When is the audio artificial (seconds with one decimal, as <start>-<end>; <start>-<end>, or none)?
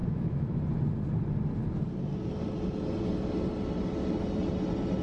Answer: 0.0-0.6